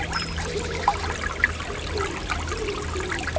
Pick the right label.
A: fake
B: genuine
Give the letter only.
B